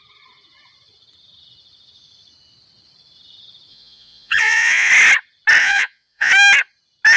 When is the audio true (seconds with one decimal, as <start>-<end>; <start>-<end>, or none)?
0.0-3.7; 4.9-5.6; 6.3-7.2